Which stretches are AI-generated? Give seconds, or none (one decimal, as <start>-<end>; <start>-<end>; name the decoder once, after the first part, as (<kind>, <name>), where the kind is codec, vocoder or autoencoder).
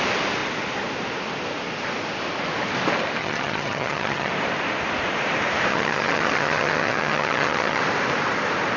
3.2-4.3 (vocoder, HiFi-GAN); 5.7-7.8